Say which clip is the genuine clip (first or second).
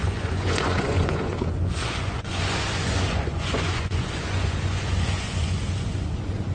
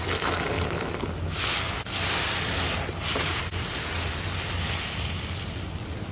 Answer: second